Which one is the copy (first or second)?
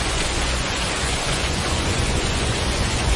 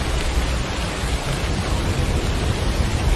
first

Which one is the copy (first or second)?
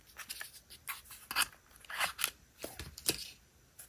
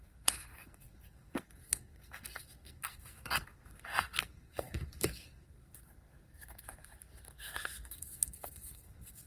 second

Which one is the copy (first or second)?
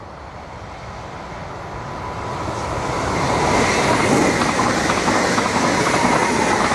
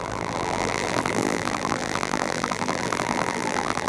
second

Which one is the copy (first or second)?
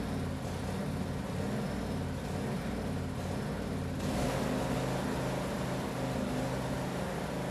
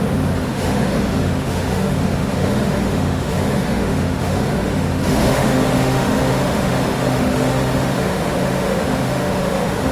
second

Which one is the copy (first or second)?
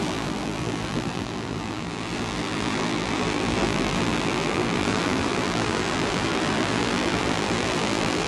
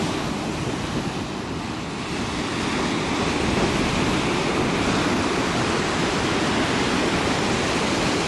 first